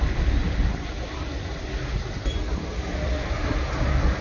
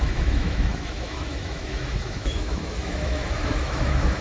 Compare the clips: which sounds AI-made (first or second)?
second